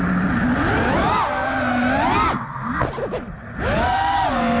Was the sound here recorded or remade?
recorded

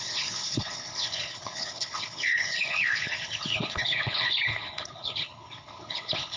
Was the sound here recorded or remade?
remade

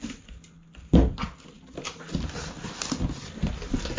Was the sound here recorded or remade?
recorded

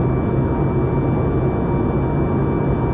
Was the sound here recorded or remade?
recorded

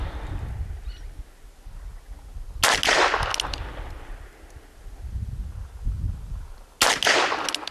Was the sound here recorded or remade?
recorded